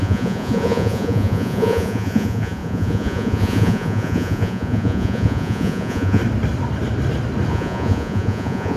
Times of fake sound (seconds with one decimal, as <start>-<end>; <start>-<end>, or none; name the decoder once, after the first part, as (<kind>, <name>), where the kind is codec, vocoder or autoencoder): 0.0-6.2 (vocoder, Vocos); 7.5-8.8